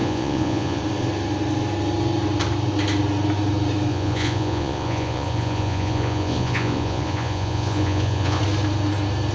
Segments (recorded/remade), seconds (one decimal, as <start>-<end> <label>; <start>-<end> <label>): 0.0-0.8 remade; 0.8-3.9 recorded; 3.9-8.4 remade; 8.4-9.3 recorded